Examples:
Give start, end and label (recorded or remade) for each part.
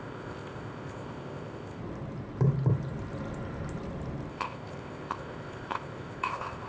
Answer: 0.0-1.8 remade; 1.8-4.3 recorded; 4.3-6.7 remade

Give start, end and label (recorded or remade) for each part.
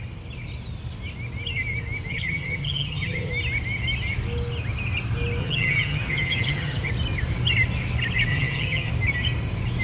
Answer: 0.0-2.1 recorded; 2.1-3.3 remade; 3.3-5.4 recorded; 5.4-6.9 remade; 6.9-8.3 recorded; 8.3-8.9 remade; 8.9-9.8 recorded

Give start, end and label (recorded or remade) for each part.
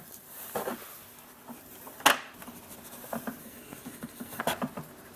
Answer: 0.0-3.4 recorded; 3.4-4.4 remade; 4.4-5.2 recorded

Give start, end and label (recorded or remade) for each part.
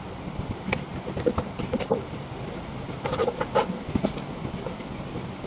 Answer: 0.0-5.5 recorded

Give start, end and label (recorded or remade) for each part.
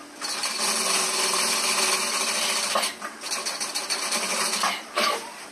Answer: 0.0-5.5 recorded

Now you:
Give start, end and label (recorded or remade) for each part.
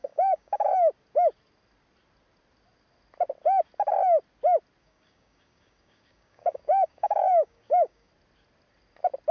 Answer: 0.0-0.7 remade; 0.7-4.8 recorded; 4.8-8.1 remade; 8.1-9.3 recorded